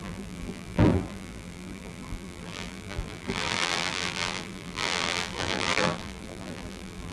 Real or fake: fake